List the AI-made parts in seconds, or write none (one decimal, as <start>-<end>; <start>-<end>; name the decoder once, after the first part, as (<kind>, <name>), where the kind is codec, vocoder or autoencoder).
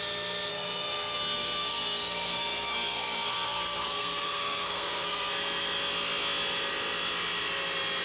0.5-5.3 (codec, SNAC)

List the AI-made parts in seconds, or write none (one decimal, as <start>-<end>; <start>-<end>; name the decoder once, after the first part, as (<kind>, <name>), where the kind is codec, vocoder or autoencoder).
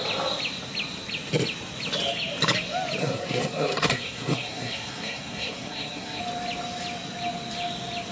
3.0-6.2 (codec, SNAC)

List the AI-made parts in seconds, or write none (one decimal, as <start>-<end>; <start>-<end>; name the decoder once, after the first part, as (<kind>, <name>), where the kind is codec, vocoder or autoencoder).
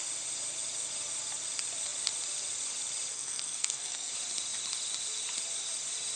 3.1-4.1 (codec, SNAC)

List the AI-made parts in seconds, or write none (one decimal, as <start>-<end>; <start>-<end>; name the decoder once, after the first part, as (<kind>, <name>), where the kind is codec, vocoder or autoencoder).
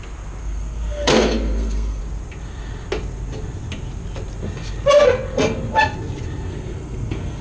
0.4-2.0 (codec, SNAC); 6.5-7.4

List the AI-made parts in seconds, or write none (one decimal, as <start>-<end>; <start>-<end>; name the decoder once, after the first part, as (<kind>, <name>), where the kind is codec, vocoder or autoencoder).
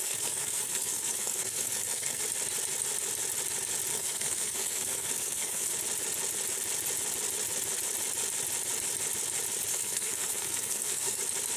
0.0-2.2 (codec, SNAC); 3.9-5.7; 9.7-11.2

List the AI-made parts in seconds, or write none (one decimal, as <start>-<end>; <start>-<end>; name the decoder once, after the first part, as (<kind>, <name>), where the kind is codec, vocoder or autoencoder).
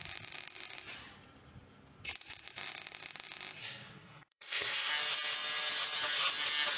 3.6-4.9 (codec, SNAC)